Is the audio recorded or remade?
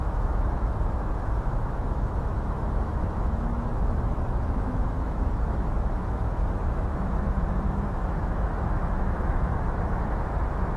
remade